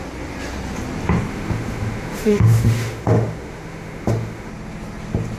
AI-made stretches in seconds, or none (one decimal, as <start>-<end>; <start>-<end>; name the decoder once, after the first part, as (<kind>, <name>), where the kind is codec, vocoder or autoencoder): 1.3-4.5 (autoencoder, DAC-VAE)